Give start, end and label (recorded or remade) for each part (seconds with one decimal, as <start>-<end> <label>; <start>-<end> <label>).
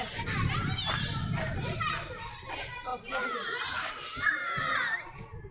0.0-5.5 recorded